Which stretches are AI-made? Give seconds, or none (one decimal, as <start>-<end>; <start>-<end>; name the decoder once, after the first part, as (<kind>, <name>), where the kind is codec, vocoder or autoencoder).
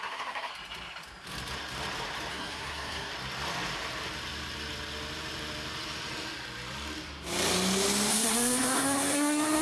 0.0-0.5 (codec, SNAC); 2.3-3.1; 8.1-9.6